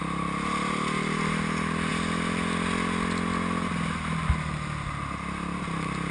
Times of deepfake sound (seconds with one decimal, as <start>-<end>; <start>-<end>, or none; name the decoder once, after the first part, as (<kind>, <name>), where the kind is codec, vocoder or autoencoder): none